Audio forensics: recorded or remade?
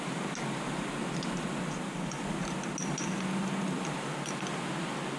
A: recorded